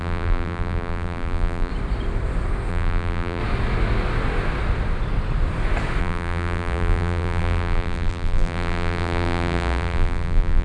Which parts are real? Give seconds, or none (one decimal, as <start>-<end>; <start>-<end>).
1.7-2.7; 3.4-6.0